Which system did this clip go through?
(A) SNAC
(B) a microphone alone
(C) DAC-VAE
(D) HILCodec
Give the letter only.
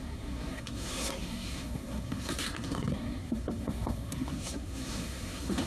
A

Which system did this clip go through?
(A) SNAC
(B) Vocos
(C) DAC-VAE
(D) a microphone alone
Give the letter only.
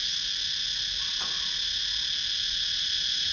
D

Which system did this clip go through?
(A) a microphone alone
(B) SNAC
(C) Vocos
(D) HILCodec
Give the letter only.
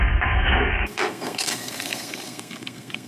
B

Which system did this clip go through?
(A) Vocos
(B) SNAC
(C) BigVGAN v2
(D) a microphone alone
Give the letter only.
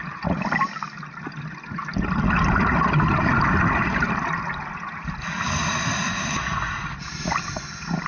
D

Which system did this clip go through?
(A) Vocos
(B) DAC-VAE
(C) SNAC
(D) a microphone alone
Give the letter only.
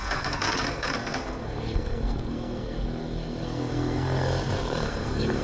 C